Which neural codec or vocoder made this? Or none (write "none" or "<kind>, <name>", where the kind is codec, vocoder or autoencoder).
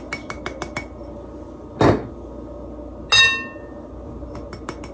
none